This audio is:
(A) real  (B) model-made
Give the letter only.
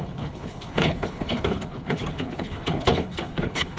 B